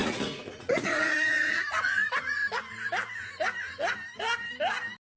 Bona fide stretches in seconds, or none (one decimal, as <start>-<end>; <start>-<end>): 2.4-5.2